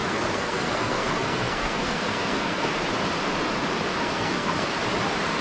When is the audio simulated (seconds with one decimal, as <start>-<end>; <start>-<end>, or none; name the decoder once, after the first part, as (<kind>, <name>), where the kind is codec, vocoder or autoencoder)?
0.0-2.8 (codec, SNAC); 4.0-4.7